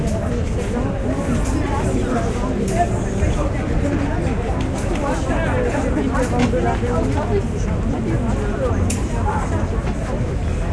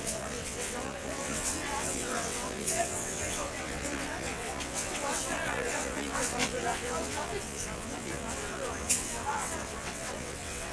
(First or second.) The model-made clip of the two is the second